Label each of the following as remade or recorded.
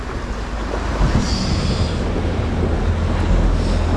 recorded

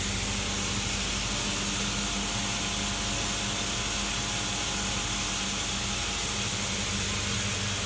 recorded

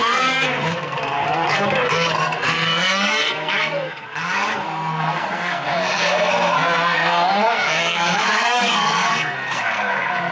remade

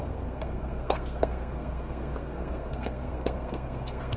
remade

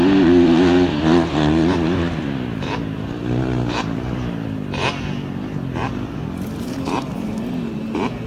recorded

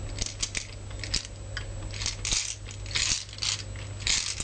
recorded